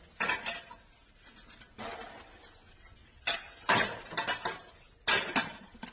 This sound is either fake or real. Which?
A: real